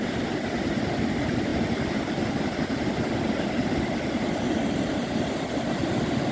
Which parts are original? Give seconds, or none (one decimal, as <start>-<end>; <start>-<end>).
0.0-6.3